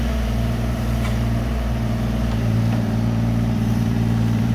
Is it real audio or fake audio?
fake